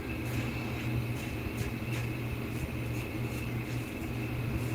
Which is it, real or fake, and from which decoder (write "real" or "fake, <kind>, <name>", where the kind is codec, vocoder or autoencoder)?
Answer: real